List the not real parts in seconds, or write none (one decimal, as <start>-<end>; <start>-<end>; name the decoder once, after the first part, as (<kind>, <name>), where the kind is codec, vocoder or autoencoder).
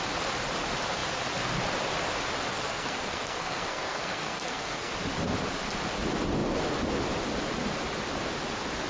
2.5-4.9 (codec, SNAC)